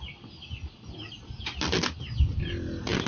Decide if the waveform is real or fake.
real